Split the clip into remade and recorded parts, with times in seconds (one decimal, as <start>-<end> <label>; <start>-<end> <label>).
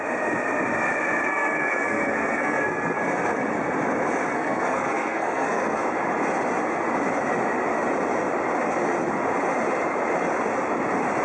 0.0-1.3 recorded; 1.3-3.0 remade; 3.0-4.3 recorded; 4.3-5.8 remade; 5.8-11.2 recorded